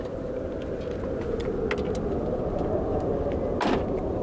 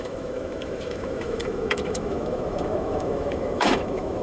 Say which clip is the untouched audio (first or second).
first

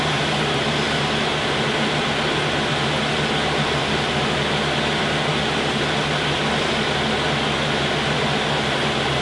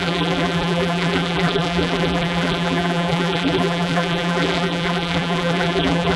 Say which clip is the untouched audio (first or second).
first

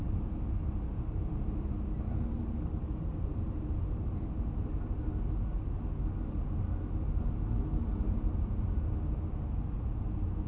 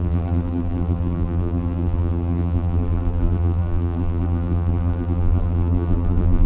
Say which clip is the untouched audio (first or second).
first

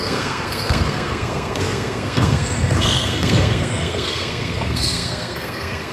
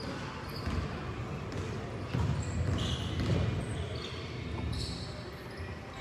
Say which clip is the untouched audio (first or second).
second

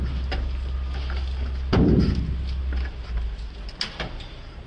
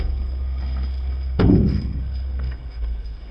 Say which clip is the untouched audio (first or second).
first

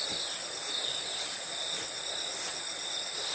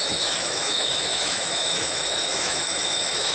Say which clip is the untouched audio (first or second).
first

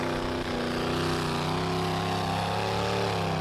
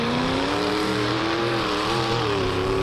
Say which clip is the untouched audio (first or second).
first